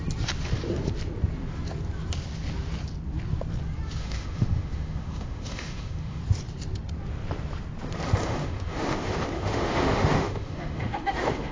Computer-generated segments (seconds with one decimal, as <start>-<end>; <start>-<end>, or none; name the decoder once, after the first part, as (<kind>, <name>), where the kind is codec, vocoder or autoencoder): 4.0-6.2 (autoencoder, DAC-VAE); 8.2-11.5